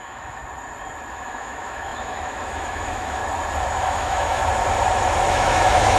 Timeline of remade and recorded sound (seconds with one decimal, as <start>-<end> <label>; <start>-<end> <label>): 0.0-0.4 remade; 0.4-1.1 recorded; 1.1-3.2 remade; 3.2-3.8 recorded; 3.8-4.4 remade; 4.4-5.3 recorded; 5.3-6.0 remade